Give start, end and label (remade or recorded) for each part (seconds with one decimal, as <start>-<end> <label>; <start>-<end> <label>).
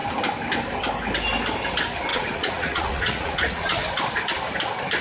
0.0-2.1 recorded; 2.1-3.8 remade; 3.8-5.0 recorded